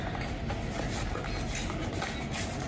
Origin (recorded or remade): recorded